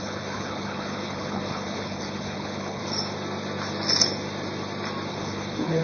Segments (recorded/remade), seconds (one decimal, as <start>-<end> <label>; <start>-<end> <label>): 0.0-2.8 remade; 2.8-5.1 recorded; 5.1-5.8 remade